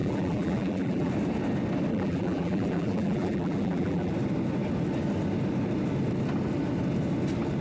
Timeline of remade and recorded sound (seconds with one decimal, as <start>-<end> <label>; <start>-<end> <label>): 0.0-1.1 remade; 1.1-1.9 recorded; 1.9-4.1 remade; 4.1-7.6 recorded